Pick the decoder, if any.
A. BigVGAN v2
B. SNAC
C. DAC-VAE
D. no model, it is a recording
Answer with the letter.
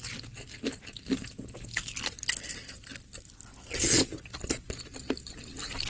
D